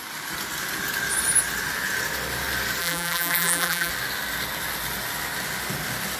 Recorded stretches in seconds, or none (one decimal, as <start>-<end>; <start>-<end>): 0.0-2.8; 3.9-6.2